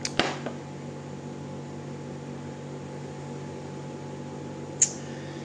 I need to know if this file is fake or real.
real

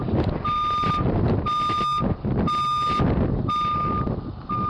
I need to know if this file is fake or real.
real